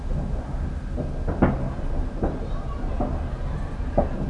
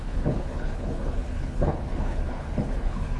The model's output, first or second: second